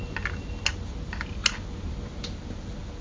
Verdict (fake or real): real